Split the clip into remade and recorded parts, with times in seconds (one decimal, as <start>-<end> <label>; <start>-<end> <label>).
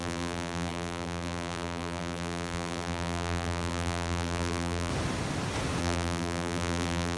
0.0-4.9 remade; 4.9-5.8 recorded; 5.8-7.2 remade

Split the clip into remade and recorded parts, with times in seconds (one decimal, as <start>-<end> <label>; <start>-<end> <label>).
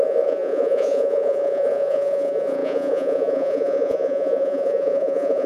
0.0-5.5 remade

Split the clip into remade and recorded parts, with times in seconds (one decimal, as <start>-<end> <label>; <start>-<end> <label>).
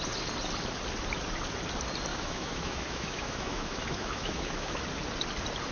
0.0-2.1 recorded; 2.1-4.8 remade; 4.8-5.7 recorded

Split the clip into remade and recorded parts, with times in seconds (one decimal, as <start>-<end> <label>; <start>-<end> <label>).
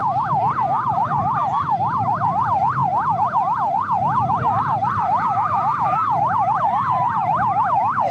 0.0-0.9 recorded; 0.9-2.8 remade; 2.8-4.6 recorded; 4.6-5.7 remade; 5.7-6.6 recorded; 6.6-8.1 remade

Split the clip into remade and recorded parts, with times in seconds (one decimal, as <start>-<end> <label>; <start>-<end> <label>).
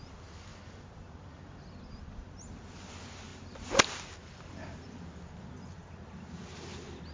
0.0-7.1 recorded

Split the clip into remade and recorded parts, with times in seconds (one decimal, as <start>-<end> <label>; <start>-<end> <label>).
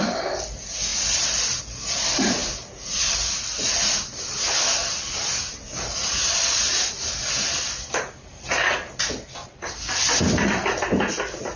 0.0-11.6 recorded